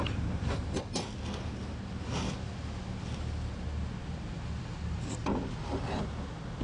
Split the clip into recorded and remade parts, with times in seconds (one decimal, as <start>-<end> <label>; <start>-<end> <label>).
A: 0.0-6.6 recorded